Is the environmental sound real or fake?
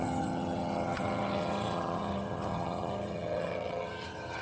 fake